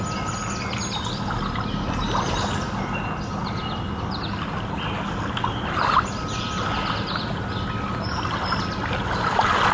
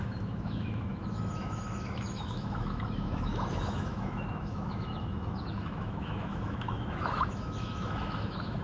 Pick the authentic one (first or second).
first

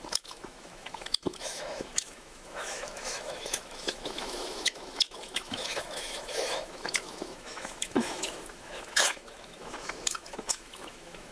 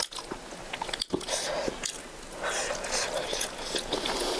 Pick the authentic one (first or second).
second